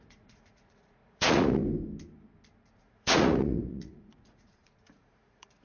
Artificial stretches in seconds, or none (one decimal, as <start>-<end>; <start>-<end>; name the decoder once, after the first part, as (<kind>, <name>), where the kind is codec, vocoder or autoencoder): 0.0-1.6 (vocoder, Vocos); 2.7-5.6

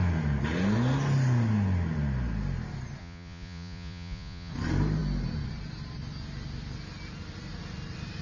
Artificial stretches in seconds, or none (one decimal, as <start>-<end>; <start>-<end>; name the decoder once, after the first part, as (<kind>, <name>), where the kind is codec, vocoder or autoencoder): 3.0-4.5 (vocoder, Vocos)

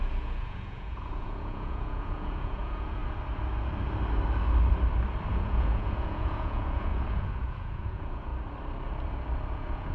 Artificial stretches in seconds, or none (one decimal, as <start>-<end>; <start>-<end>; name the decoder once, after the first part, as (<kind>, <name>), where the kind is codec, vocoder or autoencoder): 0.0-3.0 (vocoder, Vocos); 5.3-8.3; 9.5-9.9

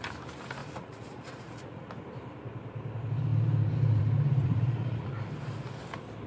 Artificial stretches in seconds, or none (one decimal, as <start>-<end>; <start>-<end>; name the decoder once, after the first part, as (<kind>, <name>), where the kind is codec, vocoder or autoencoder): 0.6-1.9 (vocoder, Vocos); 4.4-5.1

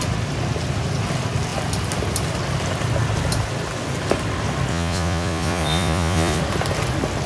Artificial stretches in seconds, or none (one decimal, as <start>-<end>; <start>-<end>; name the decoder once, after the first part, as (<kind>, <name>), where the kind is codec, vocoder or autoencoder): 4.7-6.4 (vocoder, Vocos)

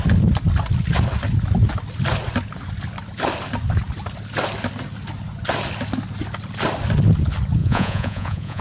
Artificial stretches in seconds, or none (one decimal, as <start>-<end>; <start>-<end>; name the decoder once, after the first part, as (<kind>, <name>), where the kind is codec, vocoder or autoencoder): 7.6-8.6 (vocoder, Vocos)

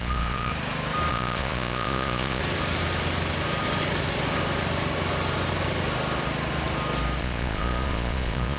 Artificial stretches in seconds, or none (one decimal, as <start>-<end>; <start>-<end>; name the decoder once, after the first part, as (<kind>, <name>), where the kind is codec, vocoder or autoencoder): 0.0-0.5 (vocoder, Vocos); 1.1-2.4; 7.2-8.6

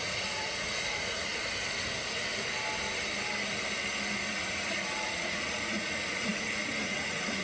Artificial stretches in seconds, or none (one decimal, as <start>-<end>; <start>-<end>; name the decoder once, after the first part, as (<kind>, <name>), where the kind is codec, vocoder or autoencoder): 0.0-1.3 (vocoder, Vocos); 4.3-7.4